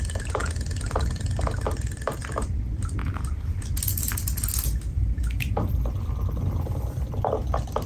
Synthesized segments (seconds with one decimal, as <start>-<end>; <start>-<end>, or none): 3.0-3.6; 4.9-5.7